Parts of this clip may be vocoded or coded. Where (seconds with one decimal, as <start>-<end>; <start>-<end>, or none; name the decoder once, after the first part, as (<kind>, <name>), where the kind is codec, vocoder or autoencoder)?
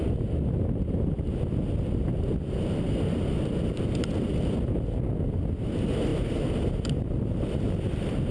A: none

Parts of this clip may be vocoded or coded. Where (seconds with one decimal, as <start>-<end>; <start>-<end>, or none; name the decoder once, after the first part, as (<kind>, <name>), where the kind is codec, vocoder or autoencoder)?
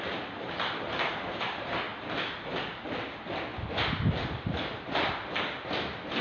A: none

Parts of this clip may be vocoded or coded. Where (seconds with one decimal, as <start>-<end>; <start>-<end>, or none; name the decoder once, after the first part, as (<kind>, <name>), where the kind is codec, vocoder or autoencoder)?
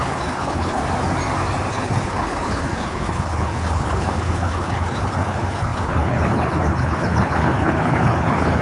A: 0.0-0.8 (codec, HILCodec); 1.7-8.6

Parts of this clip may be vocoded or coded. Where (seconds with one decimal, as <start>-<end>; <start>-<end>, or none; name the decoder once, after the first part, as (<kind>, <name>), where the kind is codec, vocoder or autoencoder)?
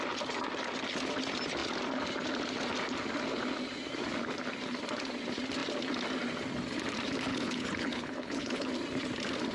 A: 7.3-8.7 (codec, HILCodec)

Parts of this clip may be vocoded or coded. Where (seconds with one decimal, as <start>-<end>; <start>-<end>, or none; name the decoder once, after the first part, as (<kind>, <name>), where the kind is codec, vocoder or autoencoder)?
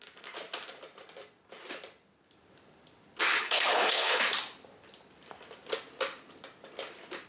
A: 3.4-4.2 (codec, HILCodec)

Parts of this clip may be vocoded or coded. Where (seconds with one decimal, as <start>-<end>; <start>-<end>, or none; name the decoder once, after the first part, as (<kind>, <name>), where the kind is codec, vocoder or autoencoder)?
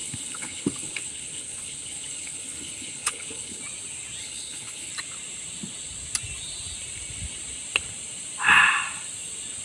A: 0.0-3.6 (codec, HILCodec); 4.2-4.9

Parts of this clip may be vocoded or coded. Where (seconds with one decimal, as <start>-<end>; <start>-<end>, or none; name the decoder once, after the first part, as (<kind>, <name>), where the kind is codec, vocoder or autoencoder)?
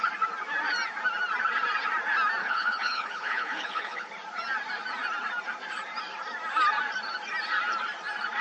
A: 2.4-4.1 (codec, HILCodec)